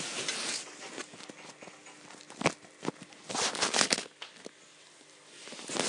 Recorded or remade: recorded